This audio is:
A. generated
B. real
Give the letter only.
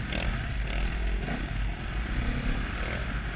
B